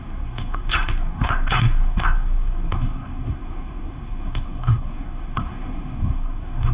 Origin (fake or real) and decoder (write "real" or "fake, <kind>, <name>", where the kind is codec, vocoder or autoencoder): fake, codec, SNAC